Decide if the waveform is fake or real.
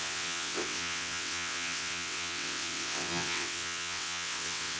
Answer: fake